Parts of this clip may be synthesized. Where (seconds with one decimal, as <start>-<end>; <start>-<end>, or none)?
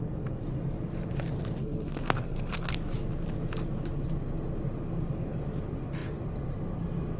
1.6-2.7